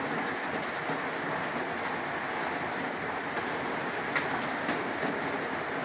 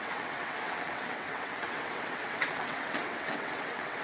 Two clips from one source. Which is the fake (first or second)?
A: second